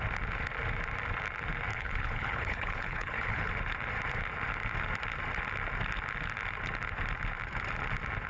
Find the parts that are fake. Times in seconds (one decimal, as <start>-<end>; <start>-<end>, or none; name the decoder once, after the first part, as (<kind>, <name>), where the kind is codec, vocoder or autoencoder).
1.7-3.5 (codec, HILCodec)